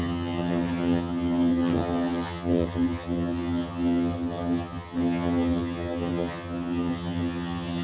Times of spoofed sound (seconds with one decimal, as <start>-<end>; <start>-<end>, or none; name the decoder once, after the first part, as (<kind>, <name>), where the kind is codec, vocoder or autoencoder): 0.0-7.8 (vocoder, HiFi-GAN)

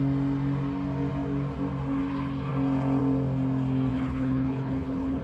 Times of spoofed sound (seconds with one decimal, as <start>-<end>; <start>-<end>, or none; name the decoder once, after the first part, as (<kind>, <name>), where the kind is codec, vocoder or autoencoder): 3.9-5.2 (codec, HILCodec)

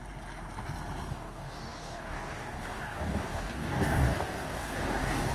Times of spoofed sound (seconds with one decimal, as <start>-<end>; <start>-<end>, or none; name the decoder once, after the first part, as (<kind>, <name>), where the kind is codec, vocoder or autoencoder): 1.1-5.3 (codec, DAC)

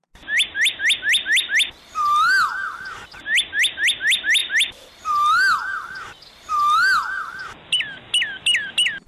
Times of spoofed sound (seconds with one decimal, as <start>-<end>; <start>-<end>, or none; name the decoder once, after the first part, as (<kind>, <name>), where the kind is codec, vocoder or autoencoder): none

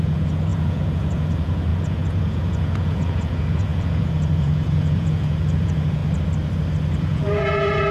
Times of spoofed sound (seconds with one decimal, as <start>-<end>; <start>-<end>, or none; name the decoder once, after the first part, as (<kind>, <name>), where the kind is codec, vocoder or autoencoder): 0.0-6.0 (vocoder, Vocos); 7.0-7.9